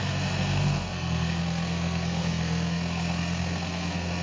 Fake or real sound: fake